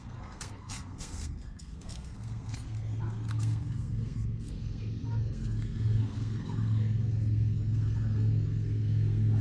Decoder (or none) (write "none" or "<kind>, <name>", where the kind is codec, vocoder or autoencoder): codec, SNAC